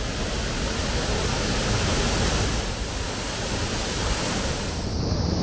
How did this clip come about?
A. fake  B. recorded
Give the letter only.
B